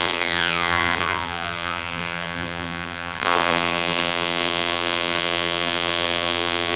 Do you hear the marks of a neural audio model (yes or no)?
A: yes